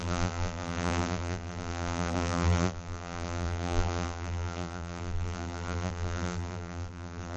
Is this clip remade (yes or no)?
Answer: yes